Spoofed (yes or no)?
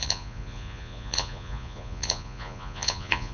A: yes